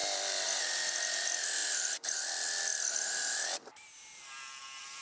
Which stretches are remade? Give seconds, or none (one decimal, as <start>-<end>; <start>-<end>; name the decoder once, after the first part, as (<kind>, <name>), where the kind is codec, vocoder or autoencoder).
none